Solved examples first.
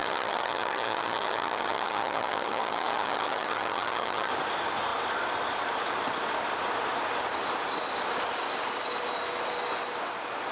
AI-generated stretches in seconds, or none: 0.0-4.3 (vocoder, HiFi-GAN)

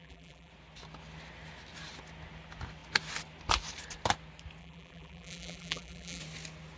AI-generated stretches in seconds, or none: 0.0-0.5 (vocoder, BigVGAN v2); 4.6-6.2

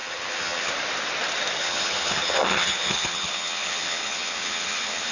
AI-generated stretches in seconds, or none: 0.0-0.7 (vocoder, HiFi-GAN); 1.6-5.1

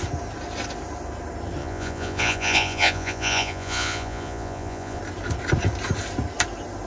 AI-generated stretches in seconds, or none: 1.6-5.0 (vocoder, Vocos)

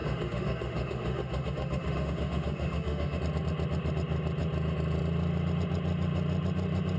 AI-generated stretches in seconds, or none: 0.0-3.2 (autoencoder, DAC-VAE)

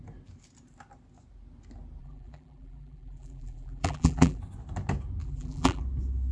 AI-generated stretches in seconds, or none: 2.0-4.4 (vocoder, BigVGAN v2); 5.2-5.8

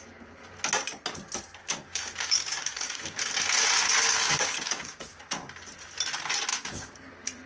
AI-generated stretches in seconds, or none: 1.6-3.2 (codec, DAC); 4.1-5.2; 6.5-7.1